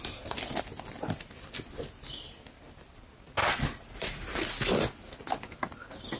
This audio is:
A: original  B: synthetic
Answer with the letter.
A